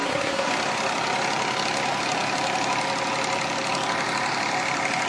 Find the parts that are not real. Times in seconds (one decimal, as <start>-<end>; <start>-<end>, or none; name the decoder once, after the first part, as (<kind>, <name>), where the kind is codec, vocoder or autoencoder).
0.0-0.5 (codec, SNAC)